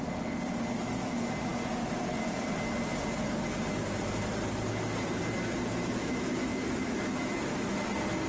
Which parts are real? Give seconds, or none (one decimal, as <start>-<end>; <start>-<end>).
0.0-5.7; 7.9-8.3